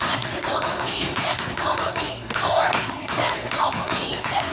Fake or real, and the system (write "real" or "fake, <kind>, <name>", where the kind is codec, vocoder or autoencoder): fake, codec, SNAC